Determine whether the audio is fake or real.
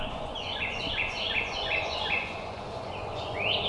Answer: fake